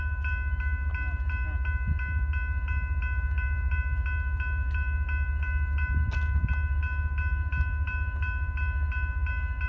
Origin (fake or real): real